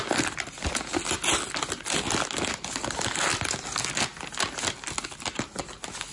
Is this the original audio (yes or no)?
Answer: yes